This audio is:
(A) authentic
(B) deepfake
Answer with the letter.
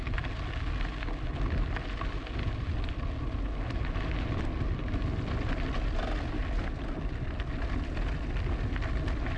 A